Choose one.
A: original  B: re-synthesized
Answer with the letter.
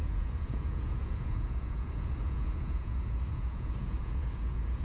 B